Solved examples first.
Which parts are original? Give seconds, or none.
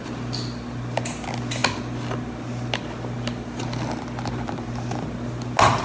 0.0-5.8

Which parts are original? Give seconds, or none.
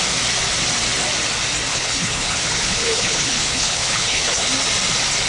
0.0-1.7; 4.5-5.3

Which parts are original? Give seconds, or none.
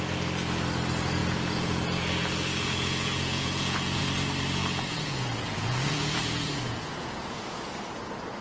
0.0-1.2; 4.0-4.6; 7.7-8.4